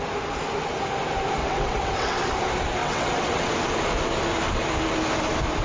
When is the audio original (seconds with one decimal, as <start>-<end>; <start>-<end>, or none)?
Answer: 0.0-1.4; 2.3-2.8; 3.5-5.6